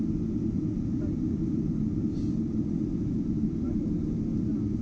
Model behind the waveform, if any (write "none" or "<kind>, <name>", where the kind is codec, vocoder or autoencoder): none